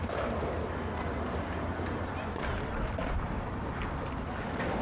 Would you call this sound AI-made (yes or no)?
no